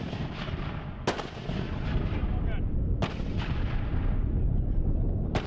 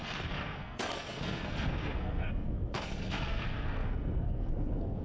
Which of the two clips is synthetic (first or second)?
second